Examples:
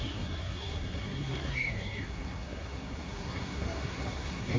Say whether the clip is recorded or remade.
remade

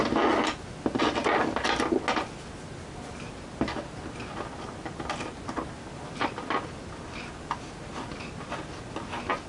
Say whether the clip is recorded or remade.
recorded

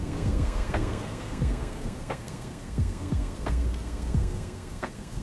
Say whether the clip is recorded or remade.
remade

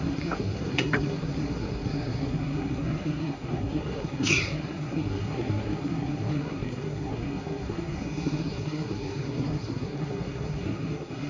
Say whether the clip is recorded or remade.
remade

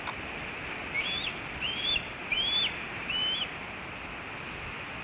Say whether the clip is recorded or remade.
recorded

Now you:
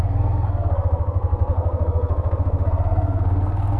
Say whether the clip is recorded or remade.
remade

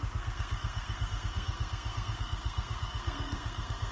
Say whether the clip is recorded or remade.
remade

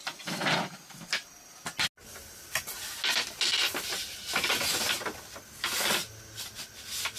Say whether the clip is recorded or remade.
recorded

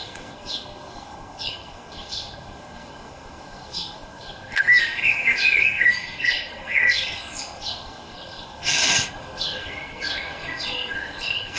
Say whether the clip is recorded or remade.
remade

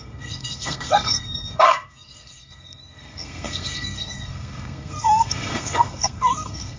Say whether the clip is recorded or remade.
remade